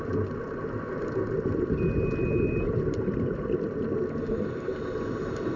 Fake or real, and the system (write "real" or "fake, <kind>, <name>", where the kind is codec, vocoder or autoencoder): real